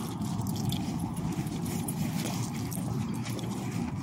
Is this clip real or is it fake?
real